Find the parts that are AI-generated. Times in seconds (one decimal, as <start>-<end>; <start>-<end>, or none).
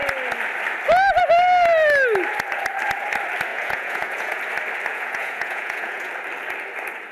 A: 3.5-4.4; 4.9-6.1